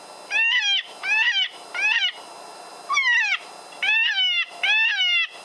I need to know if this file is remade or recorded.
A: recorded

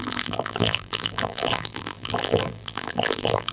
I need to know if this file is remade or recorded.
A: remade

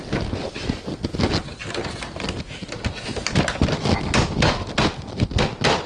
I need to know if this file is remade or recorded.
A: recorded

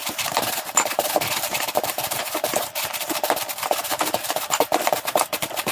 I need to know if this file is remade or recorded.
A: remade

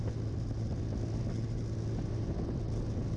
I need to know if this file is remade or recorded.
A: recorded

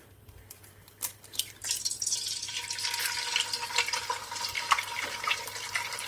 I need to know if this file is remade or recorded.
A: remade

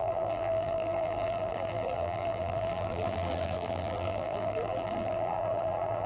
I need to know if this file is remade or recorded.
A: remade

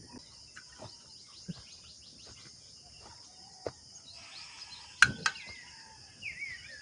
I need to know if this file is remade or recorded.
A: recorded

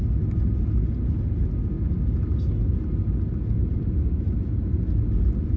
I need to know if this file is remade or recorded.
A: recorded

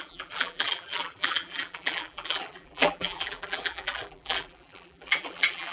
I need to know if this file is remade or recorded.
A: remade